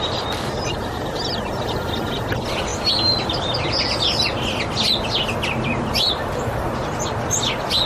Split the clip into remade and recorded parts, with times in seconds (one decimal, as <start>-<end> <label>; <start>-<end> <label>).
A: 0.0-7.9 recorded